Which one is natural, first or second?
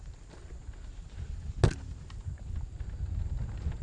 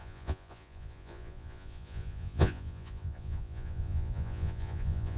first